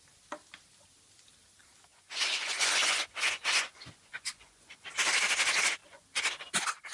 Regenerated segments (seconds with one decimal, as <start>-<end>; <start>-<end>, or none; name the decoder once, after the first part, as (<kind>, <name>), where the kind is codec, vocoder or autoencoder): 1.9-4.9 (vocoder, Vocos); 5.8-6.3